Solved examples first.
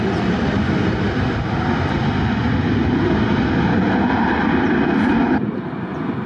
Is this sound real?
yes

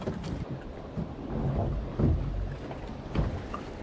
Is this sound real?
yes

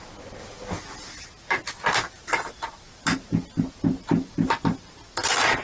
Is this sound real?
yes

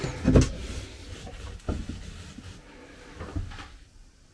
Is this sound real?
yes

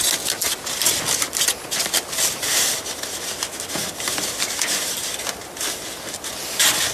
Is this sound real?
yes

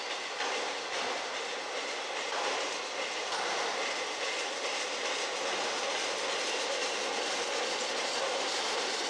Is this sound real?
yes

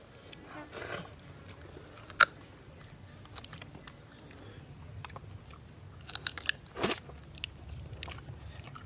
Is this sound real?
yes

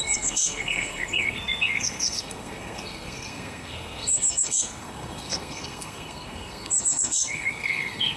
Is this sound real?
no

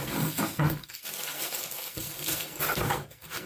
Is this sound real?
no